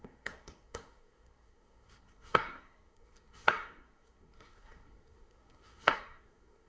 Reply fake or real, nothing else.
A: fake